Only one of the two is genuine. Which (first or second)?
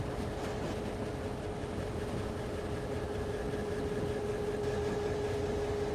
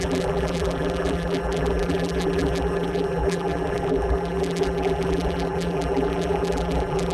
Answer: first